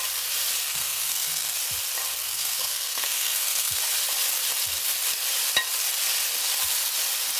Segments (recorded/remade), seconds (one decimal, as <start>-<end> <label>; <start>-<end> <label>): 0.0-0.6 recorded; 0.6-1.6 remade; 1.6-2.2 recorded; 2.2-3.8 remade; 3.8-7.4 recorded